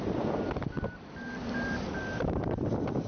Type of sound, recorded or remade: recorded